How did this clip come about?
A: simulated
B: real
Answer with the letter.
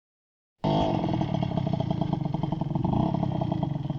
A